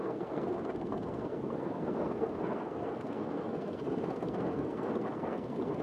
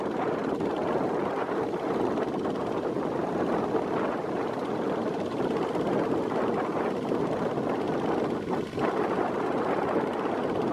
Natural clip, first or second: second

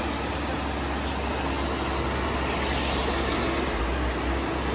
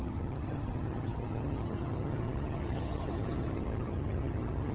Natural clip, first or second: first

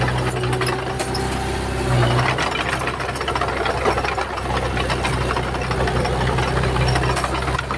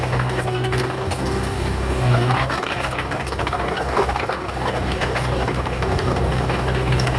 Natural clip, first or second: first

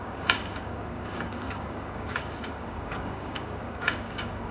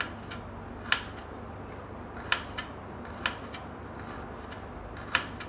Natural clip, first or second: second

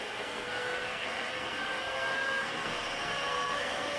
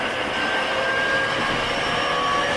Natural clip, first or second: second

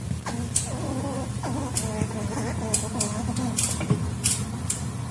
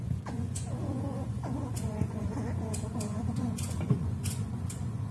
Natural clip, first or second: first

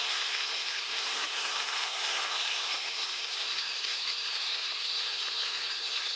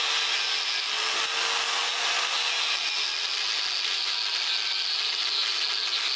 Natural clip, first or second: second